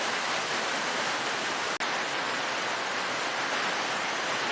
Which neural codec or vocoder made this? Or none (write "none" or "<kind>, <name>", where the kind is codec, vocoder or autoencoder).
none